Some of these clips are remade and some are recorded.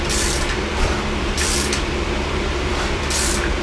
remade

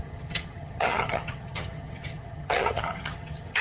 remade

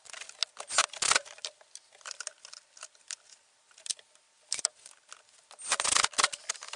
recorded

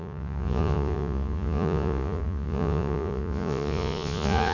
remade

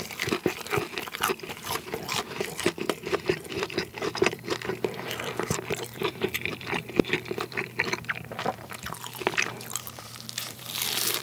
remade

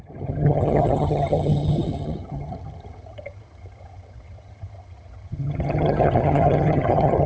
remade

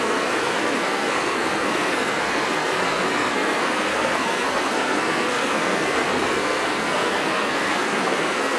remade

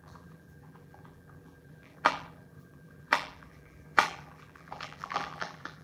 remade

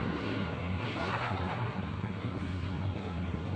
remade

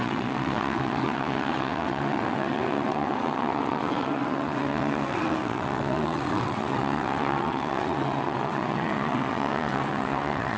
remade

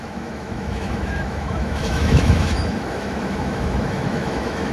remade